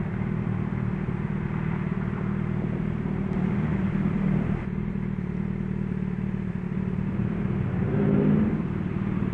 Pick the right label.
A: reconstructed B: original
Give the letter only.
A